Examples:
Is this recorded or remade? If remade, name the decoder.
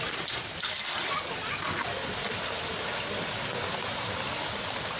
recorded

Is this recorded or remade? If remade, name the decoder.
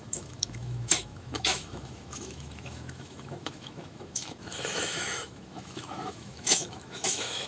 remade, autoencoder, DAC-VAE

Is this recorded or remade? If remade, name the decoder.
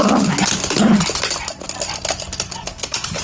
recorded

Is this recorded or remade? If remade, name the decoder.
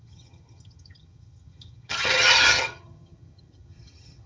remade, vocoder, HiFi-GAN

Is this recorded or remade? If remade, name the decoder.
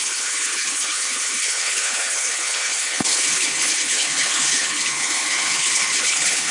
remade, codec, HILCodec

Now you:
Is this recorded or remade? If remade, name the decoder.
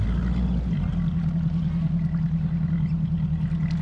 recorded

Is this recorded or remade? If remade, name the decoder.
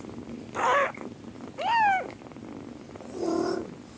recorded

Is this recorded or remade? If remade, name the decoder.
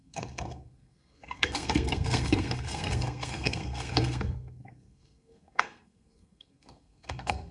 remade, codec, SNAC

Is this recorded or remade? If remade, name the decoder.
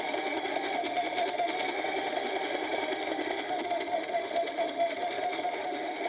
remade, autoencoder, DAC-VAE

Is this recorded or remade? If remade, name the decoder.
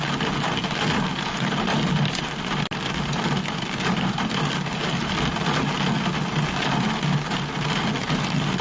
recorded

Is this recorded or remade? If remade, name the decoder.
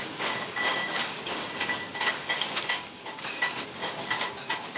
remade, codec, DAC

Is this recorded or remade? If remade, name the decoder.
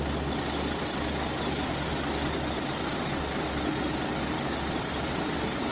recorded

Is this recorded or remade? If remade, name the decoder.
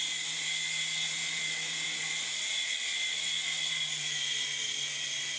recorded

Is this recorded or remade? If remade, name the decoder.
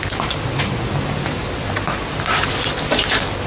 recorded